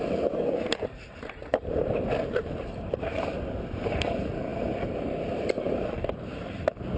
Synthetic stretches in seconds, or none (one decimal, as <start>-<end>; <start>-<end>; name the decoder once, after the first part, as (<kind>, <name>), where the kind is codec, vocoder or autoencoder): 0.0-7.0 (vocoder, BigVGAN v2)